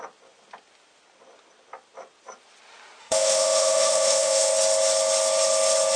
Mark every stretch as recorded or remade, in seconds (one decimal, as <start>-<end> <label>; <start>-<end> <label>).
0.0-3.0 recorded; 3.0-4.5 remade; 4.5-6.0 recorded